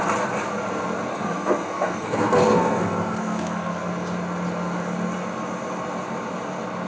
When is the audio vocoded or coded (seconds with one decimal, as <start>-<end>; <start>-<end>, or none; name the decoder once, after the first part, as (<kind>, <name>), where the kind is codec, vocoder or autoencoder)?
1.1-3.7 (codec, SNAC)